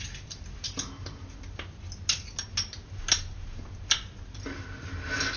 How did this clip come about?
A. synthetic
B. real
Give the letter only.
B